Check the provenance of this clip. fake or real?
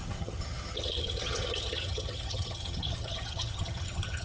fake